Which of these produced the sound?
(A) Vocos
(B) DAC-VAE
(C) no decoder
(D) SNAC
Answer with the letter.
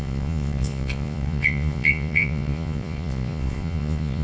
A